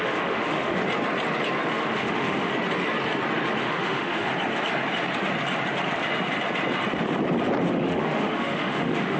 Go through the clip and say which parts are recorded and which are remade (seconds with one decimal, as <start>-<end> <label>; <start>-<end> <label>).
0.0-0.8 remade; 0.8-1.8 recorded; 1.8-2.5 remade; 2.5-3.6 recorded; 3.6-4.3 remade; 4.3-7.7 recorded; 7.7-9.2 remade